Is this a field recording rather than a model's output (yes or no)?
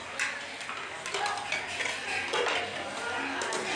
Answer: yes